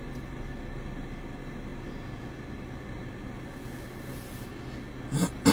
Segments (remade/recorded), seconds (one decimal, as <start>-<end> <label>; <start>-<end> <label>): 0.0-5.5 recorded